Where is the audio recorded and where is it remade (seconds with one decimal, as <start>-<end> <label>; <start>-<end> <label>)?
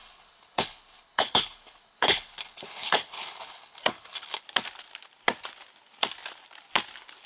0.0-4.4 remade; 4.4-7.3 recorded